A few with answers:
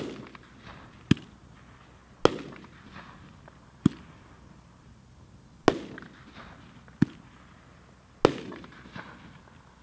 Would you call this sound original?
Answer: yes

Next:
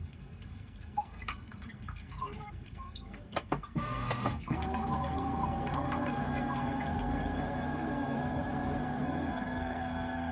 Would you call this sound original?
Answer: no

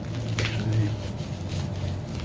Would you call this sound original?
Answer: yes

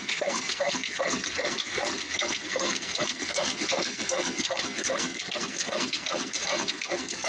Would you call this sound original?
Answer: no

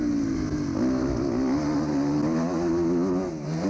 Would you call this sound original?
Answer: yes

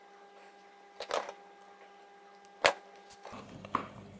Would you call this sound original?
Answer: yes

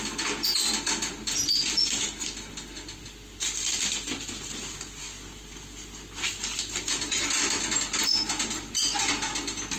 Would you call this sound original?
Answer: yes